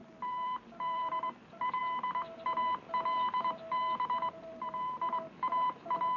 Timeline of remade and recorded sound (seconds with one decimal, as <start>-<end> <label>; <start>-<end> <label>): 0.0-6.2 recorded